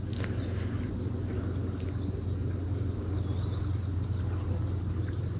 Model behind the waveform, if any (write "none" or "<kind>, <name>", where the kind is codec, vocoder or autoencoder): none